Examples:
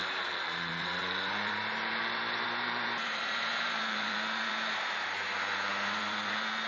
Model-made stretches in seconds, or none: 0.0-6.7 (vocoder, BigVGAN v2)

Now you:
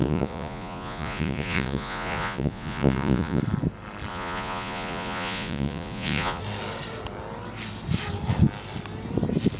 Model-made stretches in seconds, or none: 0.0-3.4 (vocoder, Vocos); 4.1-6.4

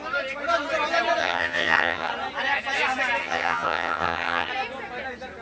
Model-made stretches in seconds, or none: 1.2-2.1 (vocoder, HiFi-GAN); 3.2-4.5